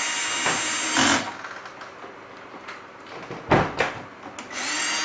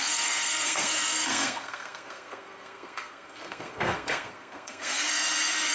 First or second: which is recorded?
first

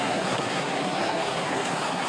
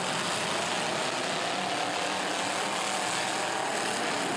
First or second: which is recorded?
second